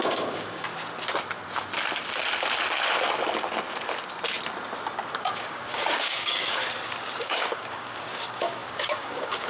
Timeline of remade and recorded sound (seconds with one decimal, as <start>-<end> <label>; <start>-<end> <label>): 0.0-0.7 remade; 0.7-5.2 recorded; 5.2-6.6 remade; 6.6-7.2 recorded; 7.2-9.5 remade